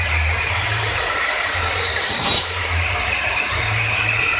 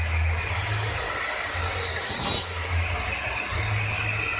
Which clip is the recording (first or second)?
second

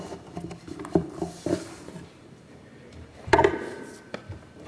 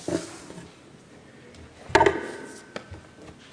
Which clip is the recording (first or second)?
second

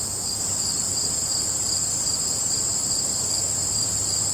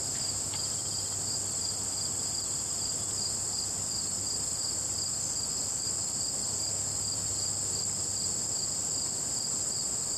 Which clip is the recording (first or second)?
second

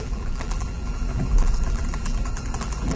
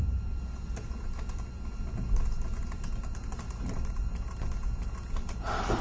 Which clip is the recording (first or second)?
second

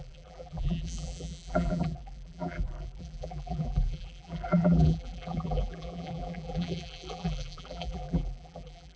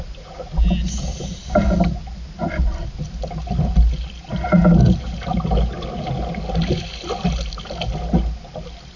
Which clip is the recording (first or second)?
second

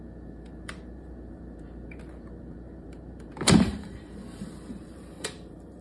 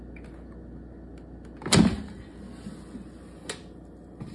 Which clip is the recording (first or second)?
second